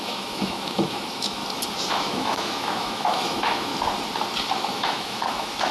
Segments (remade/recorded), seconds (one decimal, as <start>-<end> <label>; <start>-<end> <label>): 0.0-1.4 remade; 1.4-1.9 recorded; 1.9-3.7 remade; 3.7-4.5 recorded; 4.5-5.7 remade